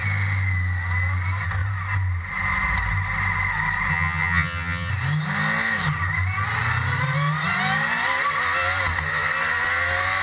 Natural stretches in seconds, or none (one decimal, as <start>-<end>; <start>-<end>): 0.0-3.9; 4.9-10.2